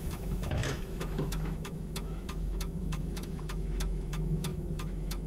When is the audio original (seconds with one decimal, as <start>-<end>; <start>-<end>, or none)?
none